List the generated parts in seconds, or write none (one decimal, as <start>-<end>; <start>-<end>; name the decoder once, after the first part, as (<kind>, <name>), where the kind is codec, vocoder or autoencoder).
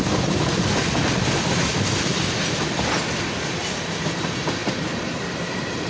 none